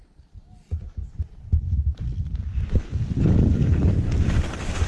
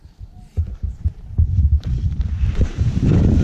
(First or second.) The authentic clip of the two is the first